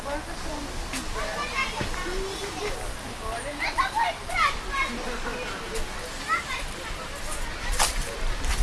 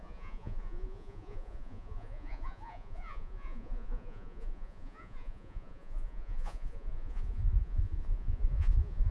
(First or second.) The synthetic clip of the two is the second